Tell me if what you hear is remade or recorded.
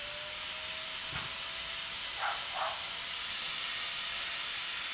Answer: recorded